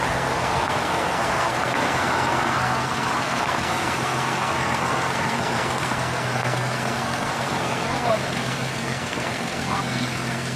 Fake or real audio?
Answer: fake